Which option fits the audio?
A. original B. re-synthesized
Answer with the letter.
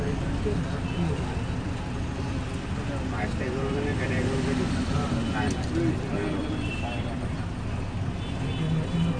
A